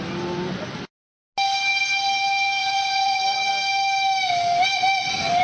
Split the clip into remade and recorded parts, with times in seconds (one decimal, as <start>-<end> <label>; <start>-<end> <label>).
0.0-2.6 recorded; 2.6-3.5 remade; 3.5-5.4 recorded